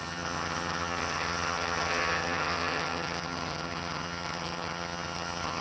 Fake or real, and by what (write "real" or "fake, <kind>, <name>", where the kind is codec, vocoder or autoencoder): fake, vocoder, HiFi-GAN